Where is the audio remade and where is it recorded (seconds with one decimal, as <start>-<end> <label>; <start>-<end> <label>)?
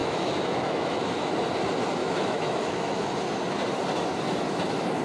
0.0-1.3 remade; 1.3-2.0 recorded; 2.0-3.1 remade; 3.1-5.0 recorded